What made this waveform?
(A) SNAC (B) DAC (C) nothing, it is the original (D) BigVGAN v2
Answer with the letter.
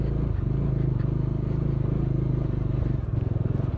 C